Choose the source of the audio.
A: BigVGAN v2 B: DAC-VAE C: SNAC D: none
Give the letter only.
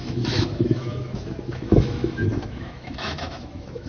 B